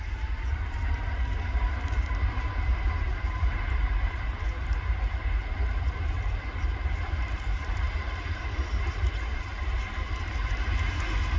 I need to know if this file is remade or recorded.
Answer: remade